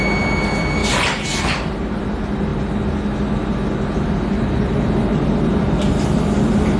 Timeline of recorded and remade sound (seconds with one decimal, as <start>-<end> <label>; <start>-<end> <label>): 0.0-0.8 recorded; 0.8-2.0 remade; 2.0-6.8 recorded